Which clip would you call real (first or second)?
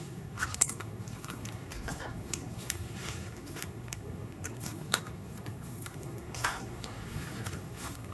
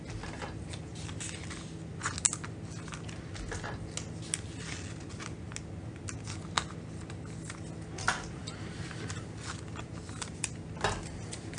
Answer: second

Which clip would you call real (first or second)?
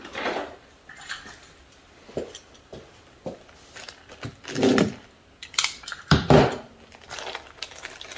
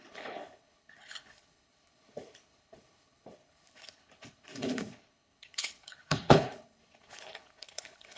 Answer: first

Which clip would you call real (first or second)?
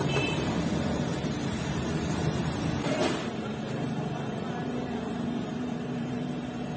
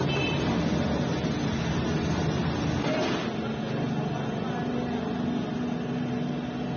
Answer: second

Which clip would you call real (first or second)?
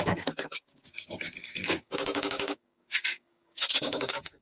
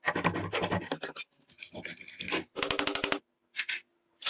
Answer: second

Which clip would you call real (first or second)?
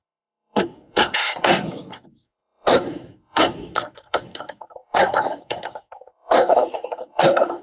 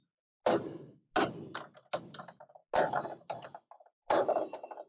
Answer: second